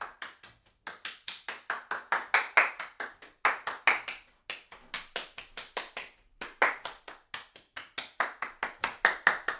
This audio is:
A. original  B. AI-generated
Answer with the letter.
A